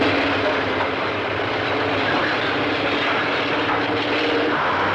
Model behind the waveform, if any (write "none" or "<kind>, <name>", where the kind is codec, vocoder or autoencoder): none